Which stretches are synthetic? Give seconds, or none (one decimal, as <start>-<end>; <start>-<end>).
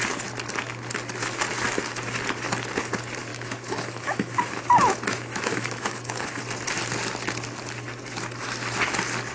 3.3-6.4